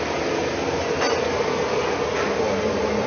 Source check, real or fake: real